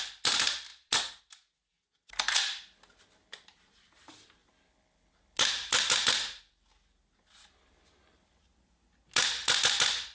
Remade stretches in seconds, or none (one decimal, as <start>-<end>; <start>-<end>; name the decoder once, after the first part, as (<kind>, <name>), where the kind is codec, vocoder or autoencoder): none